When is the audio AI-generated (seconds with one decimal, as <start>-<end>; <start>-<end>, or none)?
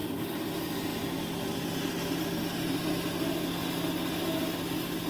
0.0-0.5